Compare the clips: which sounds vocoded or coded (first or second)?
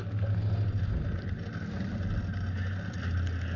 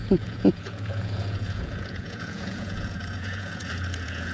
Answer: second